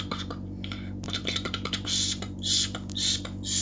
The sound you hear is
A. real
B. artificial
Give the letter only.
B